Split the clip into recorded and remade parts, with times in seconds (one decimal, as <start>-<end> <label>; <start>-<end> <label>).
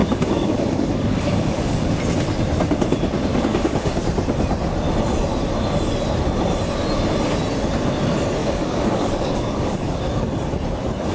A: 0.0-2.0 remade; 2.0-3.3 recorded; 3.3-4.0 remade; 4.0-8.4 recorded; 8.4-10.0 remade; 10.0-11.1 recorded